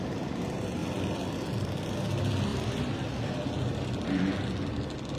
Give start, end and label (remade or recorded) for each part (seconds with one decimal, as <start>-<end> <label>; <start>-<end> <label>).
0.0-0.8 recorded; 0.8-1.6 remade; 1.6-2.5 recorded; 2.5-3.2 remade; 3.2-5.2 recorded